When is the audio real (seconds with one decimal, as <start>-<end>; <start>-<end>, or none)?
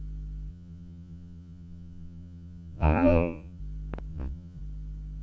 0.0-0.5; 3.6-4.1; 4.6-5.2